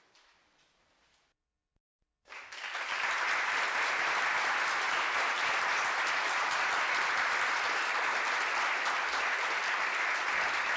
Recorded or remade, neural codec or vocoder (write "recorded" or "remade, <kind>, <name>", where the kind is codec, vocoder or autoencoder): recorded